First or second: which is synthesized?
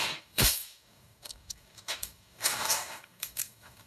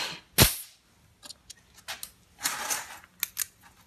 first